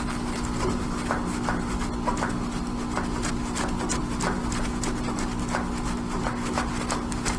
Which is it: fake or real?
real